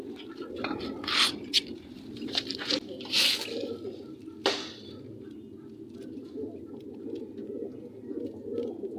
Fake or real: real